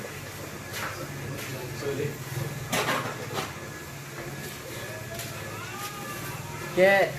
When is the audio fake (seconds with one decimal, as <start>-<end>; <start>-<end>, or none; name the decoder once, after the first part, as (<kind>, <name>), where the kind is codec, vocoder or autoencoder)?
none